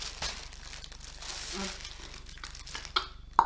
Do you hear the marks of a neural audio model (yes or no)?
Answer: no